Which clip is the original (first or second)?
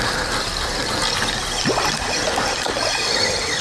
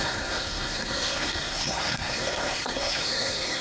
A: first